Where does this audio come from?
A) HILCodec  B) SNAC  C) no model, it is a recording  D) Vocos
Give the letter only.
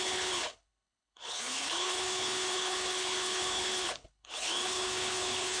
A